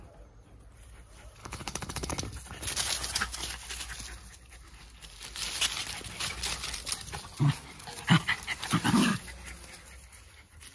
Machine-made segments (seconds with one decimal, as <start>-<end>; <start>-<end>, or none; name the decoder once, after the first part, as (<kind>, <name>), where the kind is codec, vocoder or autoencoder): 1.4-2.1 (codec, HILCodec)